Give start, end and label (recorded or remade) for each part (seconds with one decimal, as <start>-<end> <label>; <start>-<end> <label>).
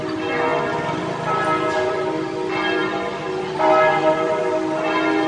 0.0-5.3 recorded